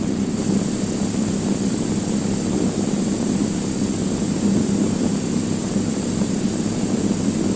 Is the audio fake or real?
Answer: real